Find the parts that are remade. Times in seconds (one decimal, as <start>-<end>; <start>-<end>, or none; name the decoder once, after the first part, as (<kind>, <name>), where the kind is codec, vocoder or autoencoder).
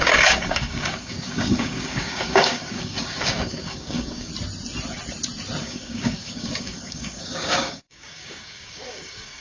0.0-4.3 (codec, DAC); 5.6-9.4